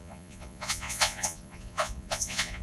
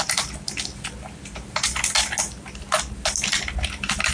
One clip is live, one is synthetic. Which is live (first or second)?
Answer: second